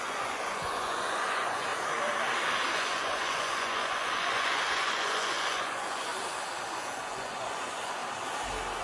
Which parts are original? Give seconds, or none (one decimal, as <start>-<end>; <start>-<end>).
1.7-2.7; 6.1-6.7; 8.0-8.8